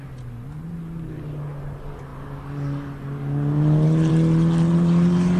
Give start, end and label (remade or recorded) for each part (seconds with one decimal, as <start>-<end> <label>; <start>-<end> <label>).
0.0-5.4 recorded